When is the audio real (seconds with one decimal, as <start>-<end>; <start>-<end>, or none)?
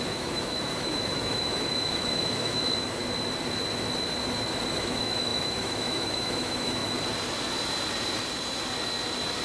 3.0-4.8; 6.8-9.4